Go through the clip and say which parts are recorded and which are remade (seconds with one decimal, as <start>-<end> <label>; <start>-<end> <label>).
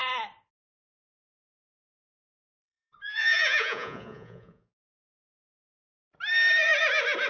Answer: 0.0-1.8 recorded; 1.8-5.4 remade; 5.4-7.3 recorded